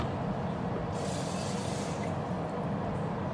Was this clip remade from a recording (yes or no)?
no